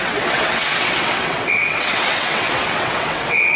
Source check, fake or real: fake